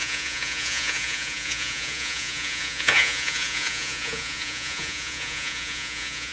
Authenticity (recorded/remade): remade